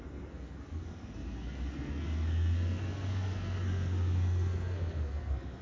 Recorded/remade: remade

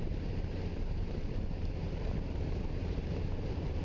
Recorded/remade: remade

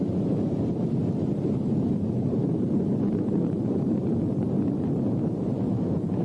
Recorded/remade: remade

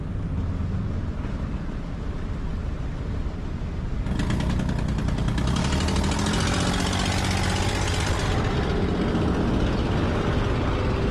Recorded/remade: recorded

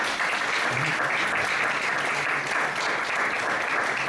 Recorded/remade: recorded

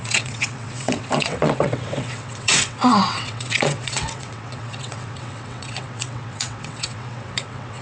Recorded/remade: remade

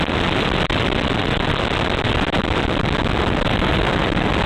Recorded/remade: recorded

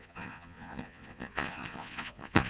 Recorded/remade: remade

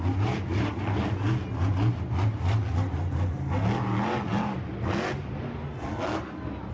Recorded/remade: recorded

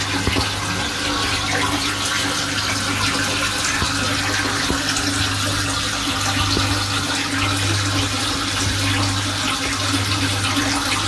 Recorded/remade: recorded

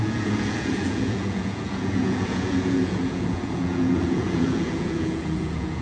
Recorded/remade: remade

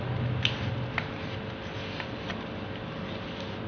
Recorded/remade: recorded